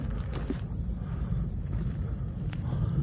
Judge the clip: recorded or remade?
remade